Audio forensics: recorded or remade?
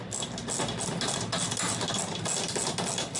recorded